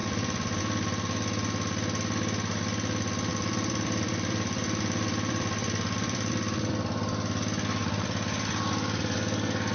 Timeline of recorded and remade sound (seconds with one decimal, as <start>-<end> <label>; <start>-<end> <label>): 0.0-0.6 remade; 0.6-3.3 recorded; 3.3-6.7 remade; 6.7-7.8 recorded; 7.8-9.0 remade; 9.0-9.7 recorded